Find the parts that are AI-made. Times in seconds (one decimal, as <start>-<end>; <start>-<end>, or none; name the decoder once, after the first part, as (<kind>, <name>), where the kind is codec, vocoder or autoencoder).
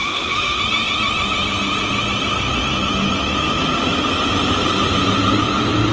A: 0.0-0.6 (autoencoder, DAC-VAE)